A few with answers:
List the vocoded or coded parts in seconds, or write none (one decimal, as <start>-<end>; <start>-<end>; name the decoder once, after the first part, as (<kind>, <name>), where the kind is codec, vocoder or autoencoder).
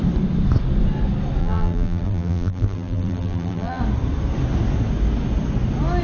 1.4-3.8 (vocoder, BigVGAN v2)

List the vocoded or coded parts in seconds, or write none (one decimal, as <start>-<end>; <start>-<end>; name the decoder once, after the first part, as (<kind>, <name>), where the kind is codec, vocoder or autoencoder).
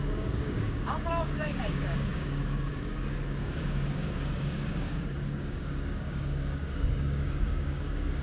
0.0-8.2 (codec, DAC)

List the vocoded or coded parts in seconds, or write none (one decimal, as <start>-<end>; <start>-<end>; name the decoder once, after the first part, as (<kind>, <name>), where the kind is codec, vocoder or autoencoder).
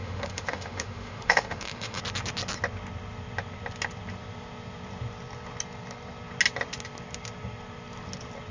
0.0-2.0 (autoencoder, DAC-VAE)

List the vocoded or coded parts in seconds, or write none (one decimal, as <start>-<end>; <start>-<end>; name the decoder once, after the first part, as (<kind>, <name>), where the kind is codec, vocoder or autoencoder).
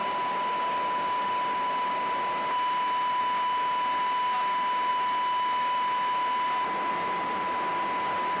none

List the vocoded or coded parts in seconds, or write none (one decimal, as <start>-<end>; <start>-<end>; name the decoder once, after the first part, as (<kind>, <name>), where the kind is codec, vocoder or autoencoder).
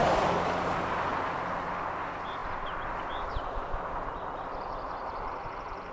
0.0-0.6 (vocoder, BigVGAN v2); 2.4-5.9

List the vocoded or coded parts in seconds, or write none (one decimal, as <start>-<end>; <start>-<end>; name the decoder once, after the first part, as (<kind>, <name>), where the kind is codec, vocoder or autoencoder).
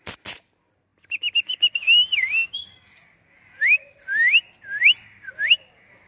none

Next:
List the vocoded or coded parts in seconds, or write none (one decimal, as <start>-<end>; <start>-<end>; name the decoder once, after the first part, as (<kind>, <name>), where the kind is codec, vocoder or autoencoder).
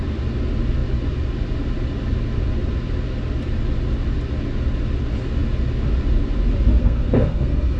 6.8-7.8 (codec, SNAC)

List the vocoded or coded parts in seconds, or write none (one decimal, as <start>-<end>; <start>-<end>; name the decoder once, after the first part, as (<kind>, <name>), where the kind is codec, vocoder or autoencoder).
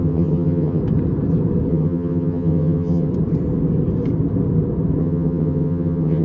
0.0-0.8 (vocoder, HiFi-GAN); 1.7-3.1; 5.0-6.2